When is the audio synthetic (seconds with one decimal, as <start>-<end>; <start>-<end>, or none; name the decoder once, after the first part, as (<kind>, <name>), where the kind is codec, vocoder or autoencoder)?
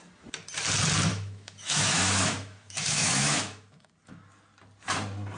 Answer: 1.1-3.9 (autoencoder, DAC-VAE)